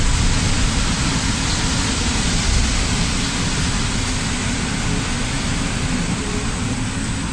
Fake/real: real